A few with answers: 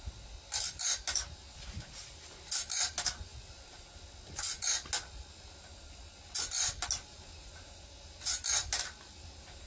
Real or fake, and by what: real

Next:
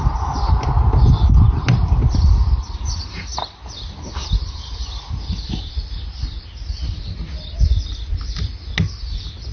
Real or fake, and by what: real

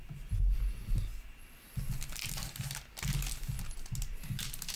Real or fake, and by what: real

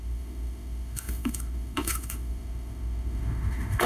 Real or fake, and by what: fake, autoencoder, DAC-VAE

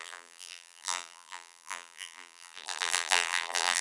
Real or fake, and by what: fake, vocoder, BigVGAN v2